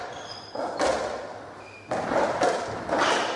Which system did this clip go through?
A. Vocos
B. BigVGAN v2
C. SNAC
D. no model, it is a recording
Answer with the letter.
D